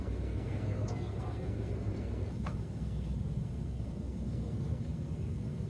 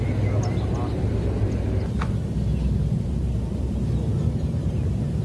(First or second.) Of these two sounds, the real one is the second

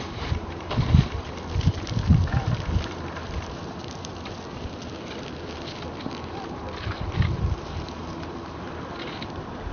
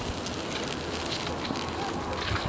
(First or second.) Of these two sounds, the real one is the second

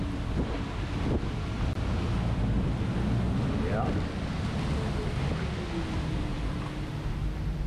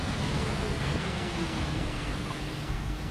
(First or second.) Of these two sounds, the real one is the first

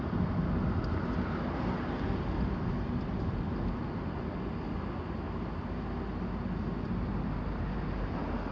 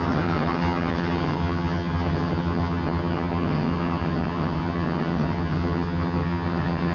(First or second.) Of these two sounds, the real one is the first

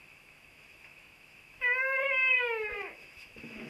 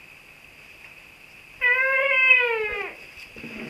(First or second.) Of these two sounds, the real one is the second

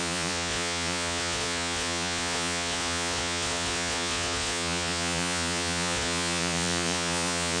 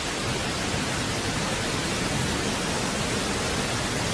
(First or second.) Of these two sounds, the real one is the second